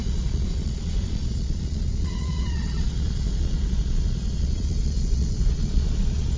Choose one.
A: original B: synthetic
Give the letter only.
B